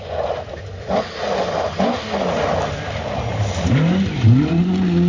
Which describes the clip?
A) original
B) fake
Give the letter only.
A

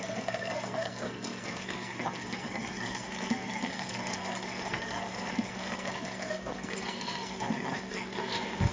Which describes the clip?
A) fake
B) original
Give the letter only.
A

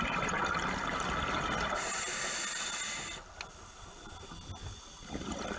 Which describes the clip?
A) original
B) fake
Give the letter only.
A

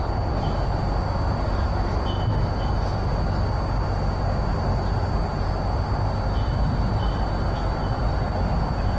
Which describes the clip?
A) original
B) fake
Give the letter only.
A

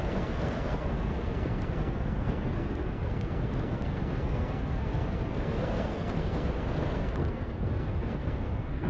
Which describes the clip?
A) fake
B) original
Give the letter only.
A